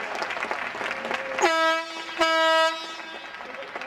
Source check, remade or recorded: recorded